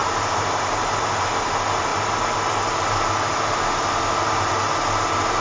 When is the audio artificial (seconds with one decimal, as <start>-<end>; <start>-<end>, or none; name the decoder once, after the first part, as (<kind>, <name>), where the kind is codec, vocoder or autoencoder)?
none